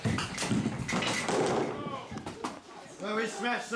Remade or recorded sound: recorded